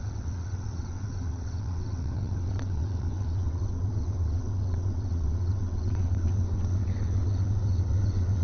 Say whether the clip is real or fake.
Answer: fake